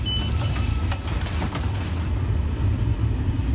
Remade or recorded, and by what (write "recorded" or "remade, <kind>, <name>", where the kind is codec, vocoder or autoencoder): recorded